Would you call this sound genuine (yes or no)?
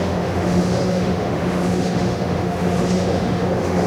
no